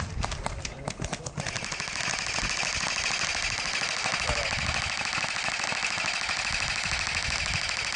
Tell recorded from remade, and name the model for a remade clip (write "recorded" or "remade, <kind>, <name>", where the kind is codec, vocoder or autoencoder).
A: recorded